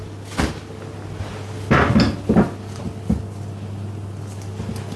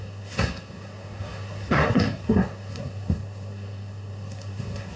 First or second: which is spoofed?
second